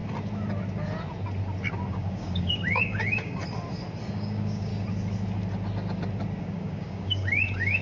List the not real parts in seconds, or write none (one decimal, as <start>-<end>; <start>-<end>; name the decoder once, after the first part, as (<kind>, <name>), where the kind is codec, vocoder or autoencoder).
1.9-3.4 (codec, DAC); 4.1-4.7; 6.4-7.8